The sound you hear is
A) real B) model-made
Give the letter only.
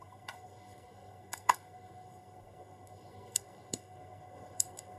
B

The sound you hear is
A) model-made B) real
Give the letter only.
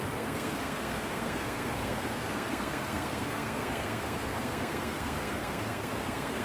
A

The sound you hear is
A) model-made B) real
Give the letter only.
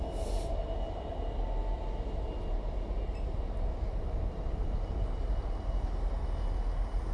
B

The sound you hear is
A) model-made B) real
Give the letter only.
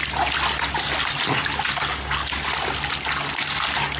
B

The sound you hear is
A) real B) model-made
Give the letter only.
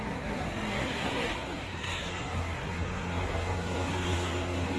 B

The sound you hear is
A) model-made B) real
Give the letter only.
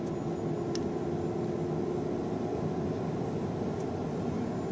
B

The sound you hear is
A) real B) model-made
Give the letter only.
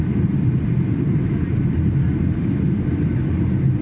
A